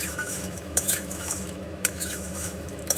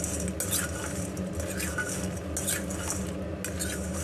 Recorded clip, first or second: second